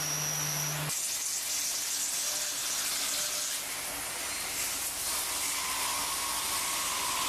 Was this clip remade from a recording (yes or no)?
no